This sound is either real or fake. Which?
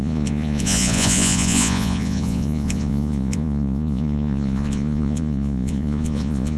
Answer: fake